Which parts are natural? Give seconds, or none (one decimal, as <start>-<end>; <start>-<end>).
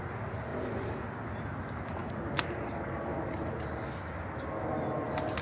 0.0-5.4